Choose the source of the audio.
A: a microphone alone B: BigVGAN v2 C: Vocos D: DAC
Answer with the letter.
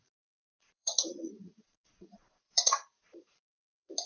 C